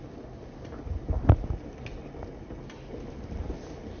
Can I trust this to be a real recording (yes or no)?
yes